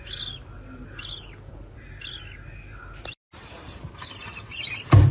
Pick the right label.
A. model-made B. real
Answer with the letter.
B